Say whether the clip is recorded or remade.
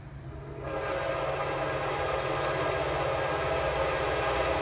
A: recorded